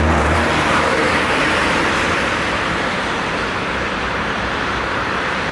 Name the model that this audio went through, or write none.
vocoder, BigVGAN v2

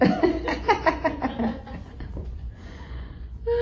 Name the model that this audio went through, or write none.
vocoder, Vocos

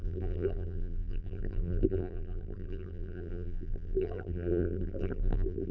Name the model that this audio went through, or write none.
vocoder, BigVGAN v2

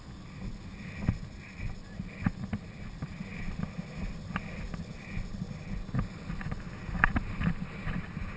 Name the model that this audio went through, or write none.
none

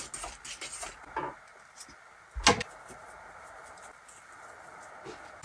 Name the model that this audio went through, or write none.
none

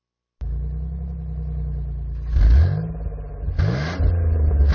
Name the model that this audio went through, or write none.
none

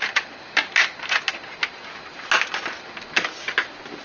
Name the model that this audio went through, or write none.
none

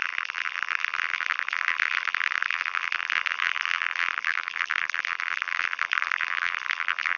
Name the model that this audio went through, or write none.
vocoder, BigVGAN v2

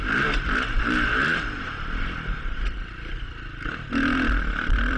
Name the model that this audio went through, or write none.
vocoder, BigVGAN v2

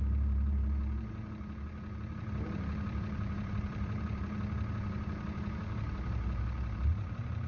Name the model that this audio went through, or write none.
vocoder, BigVGAN v2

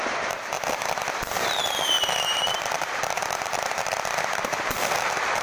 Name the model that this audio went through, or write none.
vocoder, BigVGAN v2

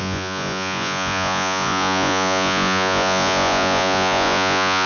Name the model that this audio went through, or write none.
vocoder, Vocos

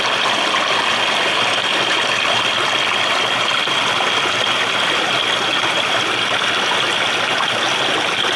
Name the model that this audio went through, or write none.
none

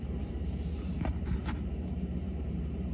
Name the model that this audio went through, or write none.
vocoder, BigVGAN v2